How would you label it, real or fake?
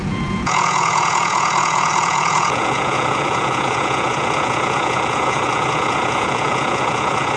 fake